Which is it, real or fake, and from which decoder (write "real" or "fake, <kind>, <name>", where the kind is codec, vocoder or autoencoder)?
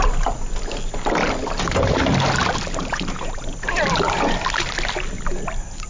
real